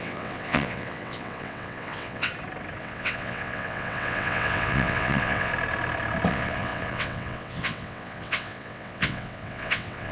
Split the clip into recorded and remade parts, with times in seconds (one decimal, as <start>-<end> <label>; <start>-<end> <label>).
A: 0.0-2.3 remade; 2.3-2.8 recorded; 2.8-5.5 remade; 5.5-6.3 recorded; 6.3-10.1 remade

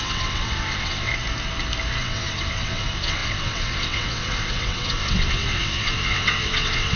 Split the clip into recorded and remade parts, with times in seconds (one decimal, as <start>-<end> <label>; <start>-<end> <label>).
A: 0.0-1.1 remade; 1.1-2.0 recorded; 2.0-7.0 remade

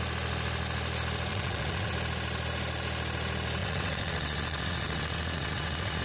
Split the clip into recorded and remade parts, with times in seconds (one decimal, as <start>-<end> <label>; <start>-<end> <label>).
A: 0.0-1.3 recorded; 1.3-1.9 remade; 1.9-3.6 recorded; 3.6-6.0 remade

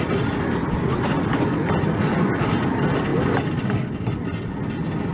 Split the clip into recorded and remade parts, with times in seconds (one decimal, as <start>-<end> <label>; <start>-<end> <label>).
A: 0.0-5.1 recorded

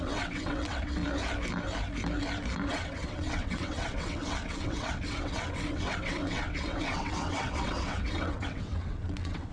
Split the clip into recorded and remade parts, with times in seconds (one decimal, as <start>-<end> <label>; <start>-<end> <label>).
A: 0.0-1.0 remade; 1.0-2.7 recorded; 2.7-9.5 remade